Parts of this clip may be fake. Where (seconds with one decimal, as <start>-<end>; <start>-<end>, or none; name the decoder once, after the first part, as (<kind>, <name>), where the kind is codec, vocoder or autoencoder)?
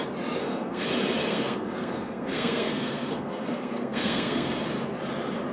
0.4-0.9 (codec, SNAC); 1.3-4.6